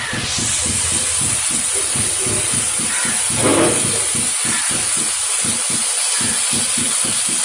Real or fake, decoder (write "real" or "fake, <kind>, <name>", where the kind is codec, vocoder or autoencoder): fake, vocoder, BigVGAN v2